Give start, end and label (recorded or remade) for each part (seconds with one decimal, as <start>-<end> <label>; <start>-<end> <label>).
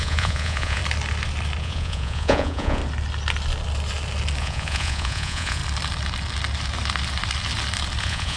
0.0-0.8 remade; 0.8-1.6 recorded; 1.6-2.8 remade; 2.8-4.4 recorded; 4.4-5.6 remade; 5.6-8.0 recorded; 8.0-8.4 remade